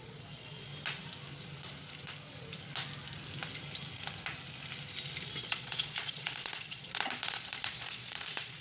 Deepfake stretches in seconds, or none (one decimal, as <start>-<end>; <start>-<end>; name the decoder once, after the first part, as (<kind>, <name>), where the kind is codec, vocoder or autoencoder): 0.0-0.7 (vocoder, Vocos); 5.4-8.6